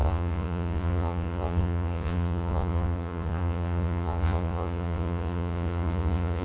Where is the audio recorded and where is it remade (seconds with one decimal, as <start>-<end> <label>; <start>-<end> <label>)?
0.0-6.4 remade